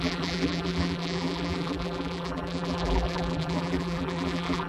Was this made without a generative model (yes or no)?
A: no